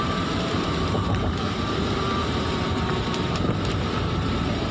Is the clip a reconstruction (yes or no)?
yes